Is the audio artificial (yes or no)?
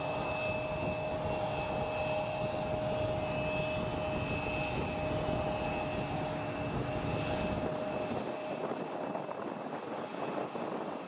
no